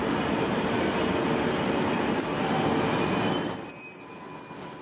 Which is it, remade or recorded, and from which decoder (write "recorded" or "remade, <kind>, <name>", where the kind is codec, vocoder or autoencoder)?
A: recorded